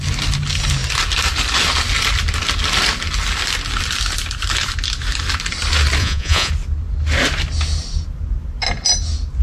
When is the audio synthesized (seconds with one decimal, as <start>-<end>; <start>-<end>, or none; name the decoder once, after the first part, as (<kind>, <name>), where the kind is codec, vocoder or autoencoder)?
6.0-6.5 (vocoder, Vocos)